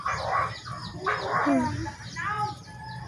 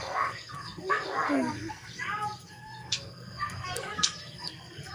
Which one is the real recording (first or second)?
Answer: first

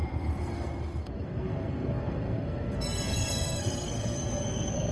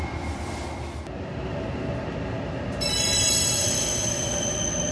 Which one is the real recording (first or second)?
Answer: second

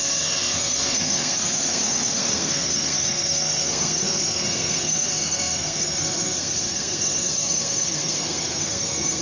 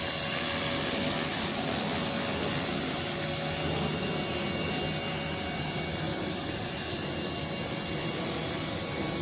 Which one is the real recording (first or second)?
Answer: second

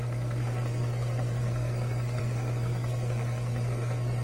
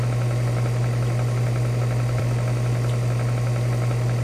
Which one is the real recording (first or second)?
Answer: second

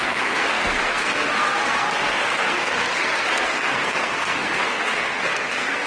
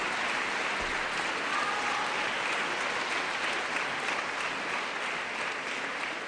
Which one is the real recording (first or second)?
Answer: second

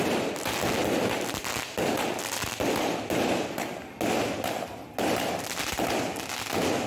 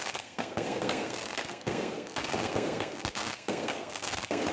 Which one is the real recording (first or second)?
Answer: first